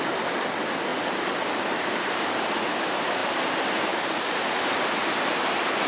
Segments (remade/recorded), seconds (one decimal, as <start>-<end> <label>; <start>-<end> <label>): 0.0-0.9 recorded; 0.9-2.4 remade; 2.4-3.2 recorded; 3.2-4.6 remade; 4.6-5.9 recorded